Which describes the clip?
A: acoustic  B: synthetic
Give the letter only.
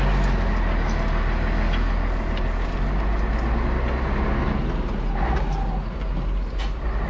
A